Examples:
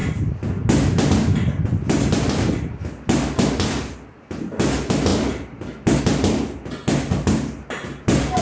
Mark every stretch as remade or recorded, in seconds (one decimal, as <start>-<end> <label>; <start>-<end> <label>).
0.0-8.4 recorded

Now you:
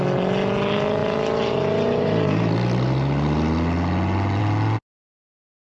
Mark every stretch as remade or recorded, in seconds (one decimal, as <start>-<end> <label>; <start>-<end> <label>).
0.0-5.7 recorded

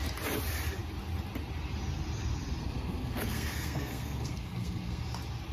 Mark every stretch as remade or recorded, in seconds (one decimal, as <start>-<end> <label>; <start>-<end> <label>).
0.0-2.6 recorded; 2.6-5.0 remade; 5.0-5.5 recorded

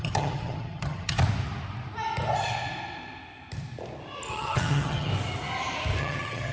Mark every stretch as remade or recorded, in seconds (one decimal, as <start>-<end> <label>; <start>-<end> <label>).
0.0-1.2 remade; 1.2-4.3 recorded; 4.3-5.1 remade; 5.1-6.0 recorded; 6.0-6.5 remade

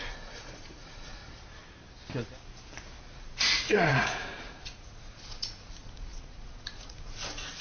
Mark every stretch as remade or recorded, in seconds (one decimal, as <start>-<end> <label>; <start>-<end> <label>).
0.0-1.2 remade; 1.2-3.0 recorded; 3.0-7.6 remade

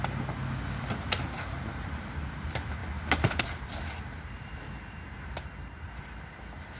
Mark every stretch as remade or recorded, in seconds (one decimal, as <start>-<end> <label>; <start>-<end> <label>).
0.0-6.8 recorded

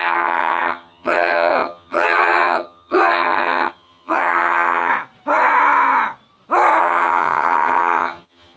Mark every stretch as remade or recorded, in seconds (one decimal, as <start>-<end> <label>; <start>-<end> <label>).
0.0-4.9 remade; 4.9-6.8 recorded; 6.8-8.6 remade